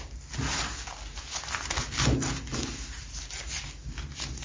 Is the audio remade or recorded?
recorded